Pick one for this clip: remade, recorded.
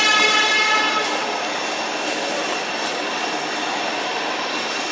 recorded